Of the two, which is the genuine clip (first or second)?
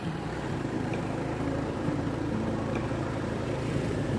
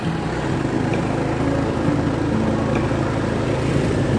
second